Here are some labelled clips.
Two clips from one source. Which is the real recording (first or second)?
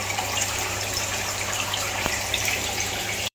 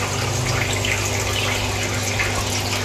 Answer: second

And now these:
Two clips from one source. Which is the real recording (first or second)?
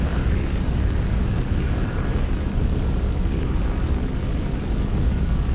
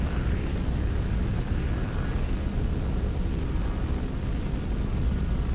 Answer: second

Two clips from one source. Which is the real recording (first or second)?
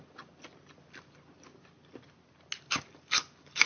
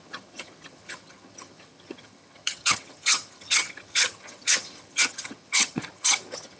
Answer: first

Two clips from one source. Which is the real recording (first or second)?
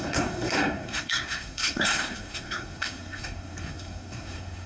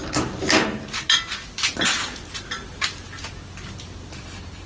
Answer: second